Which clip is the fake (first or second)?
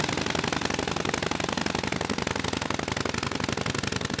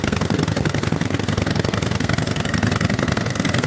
second